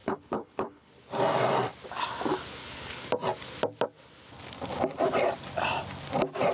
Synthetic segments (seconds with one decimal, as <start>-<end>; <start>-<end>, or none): 0.0-0.9; 2.6-3.1

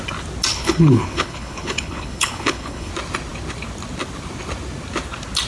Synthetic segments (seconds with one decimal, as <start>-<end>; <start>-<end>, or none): 0.5-2.9

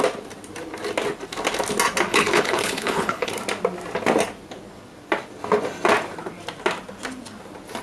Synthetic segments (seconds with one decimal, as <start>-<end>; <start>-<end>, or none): 2.1-3.3